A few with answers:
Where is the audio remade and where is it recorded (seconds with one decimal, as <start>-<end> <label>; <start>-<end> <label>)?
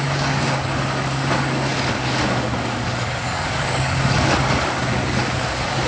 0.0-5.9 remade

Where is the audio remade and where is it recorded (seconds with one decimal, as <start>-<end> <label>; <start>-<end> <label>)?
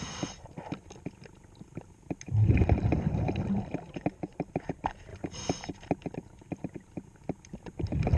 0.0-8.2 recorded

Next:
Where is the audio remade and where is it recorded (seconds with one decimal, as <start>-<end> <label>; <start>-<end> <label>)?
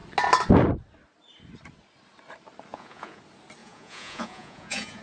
0.0-2.7 recorded; 2.7-3.2 remade; 3.2-3.6 recorded; 3.6-5.0 remade